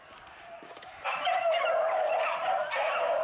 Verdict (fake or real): fake